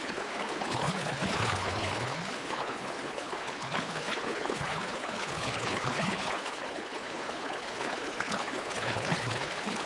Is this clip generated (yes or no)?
yes